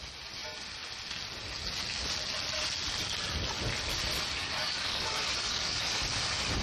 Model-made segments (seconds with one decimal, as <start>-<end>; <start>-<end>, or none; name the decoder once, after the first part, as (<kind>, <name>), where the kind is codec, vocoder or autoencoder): 4.4-6.0 (codec, DAC)